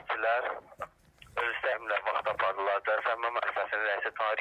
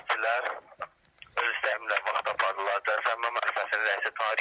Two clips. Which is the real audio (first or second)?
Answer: first